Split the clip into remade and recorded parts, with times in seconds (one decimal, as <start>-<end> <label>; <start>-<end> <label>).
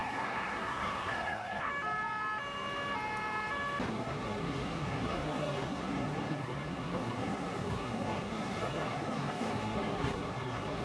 0.0-1.7 remade; 1.7-3.9 recorded; 3.9-10.8 remade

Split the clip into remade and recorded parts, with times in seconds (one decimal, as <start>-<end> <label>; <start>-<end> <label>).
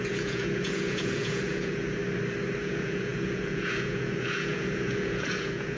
0.0-2.0 remade; 2.0-2.6 recorded; 2.6-5.8 remade